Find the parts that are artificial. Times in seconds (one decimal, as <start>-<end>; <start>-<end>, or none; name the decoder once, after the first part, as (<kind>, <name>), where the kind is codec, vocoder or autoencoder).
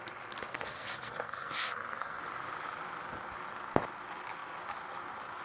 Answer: 0.5-2.2 (codec, SNAC)